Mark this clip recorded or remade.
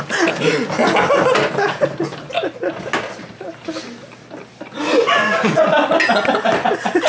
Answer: recorded